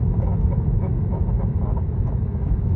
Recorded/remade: remade